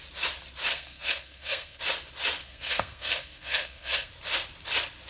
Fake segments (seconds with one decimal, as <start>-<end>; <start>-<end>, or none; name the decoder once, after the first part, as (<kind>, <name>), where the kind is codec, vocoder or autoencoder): 0.7-1.8 (codec, SNAC); 2.4-4.1